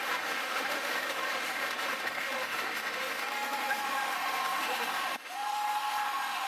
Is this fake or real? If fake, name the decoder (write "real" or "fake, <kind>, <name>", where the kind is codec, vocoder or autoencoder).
fake, autoencoder, DAC-VAE